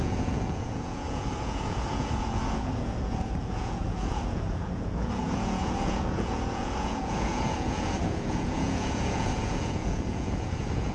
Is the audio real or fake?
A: fake